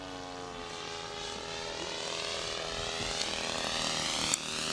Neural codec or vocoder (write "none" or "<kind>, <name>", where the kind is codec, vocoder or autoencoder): none